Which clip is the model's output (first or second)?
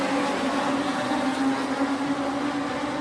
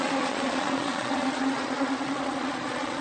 second